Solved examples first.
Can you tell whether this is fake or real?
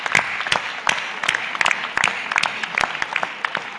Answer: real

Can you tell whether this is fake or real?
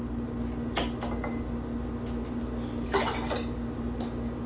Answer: real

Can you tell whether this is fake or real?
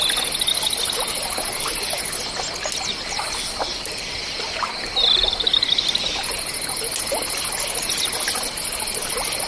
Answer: real